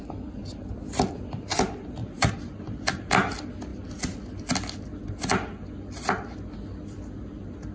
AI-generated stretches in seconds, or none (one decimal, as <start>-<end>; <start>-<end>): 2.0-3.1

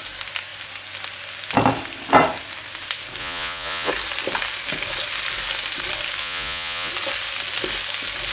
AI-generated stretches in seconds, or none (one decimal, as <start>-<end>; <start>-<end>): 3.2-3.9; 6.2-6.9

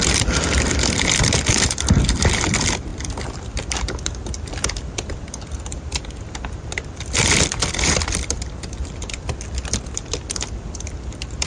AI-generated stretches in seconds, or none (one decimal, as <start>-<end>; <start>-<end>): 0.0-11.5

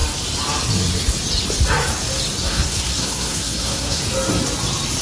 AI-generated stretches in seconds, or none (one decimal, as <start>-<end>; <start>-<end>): 2.4-4.0

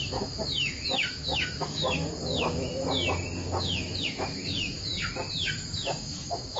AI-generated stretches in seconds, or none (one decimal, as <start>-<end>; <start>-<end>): 0.0-3.0; 3.6-4.9; 5.5-6.6